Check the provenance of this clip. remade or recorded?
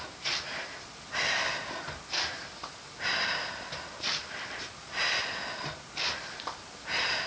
recorded